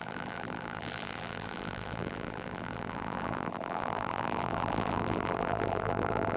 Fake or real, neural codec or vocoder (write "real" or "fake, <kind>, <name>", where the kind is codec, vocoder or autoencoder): fake, vocoder, BigVGAN v2